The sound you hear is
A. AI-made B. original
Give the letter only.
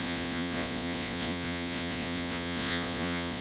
A